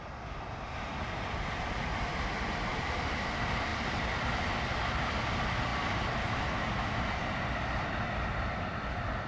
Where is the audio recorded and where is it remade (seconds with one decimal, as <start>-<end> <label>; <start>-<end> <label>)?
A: 0.0-9.3 recorded